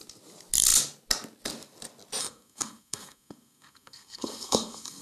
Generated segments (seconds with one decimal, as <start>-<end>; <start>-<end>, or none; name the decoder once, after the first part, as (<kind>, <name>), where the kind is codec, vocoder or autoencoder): 2.2-5.0 (codec, SNAC)